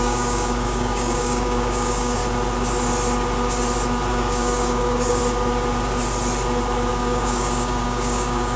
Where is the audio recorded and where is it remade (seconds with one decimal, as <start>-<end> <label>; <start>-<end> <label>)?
0.0-2.2 remade; 2.2-4.1 recorded; 4.1-5.2 remade; 5.2-6.9 recorded; 6.9-8.6 remade